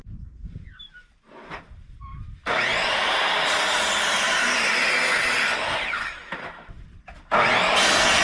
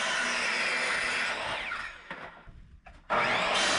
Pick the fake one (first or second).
first